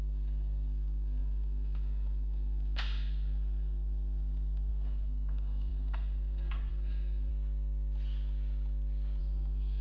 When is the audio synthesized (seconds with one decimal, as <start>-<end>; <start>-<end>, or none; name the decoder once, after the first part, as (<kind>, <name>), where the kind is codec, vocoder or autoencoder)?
0.0-7.3 (codec, SNAC); 9.2-9.8